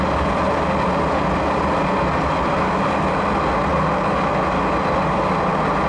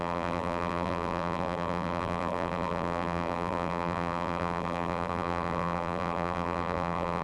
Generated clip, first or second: second